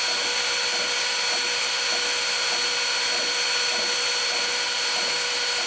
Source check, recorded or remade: recorded